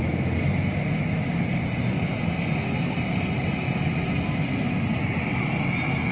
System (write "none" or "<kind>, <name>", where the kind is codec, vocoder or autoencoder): none